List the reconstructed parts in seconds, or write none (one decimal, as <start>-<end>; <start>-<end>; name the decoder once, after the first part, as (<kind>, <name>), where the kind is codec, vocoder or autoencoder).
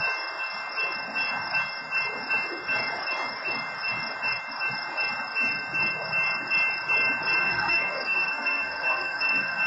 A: 7.4-9.7 (codec, SNAC)